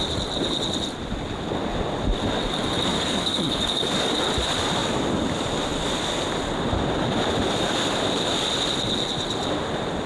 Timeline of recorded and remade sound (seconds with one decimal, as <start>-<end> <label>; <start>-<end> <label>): 0.0-2.9 recorded; 2.9-4.1 remade; 4.1-10.1 recorded